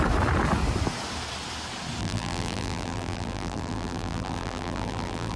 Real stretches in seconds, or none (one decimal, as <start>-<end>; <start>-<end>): 0.0-2.0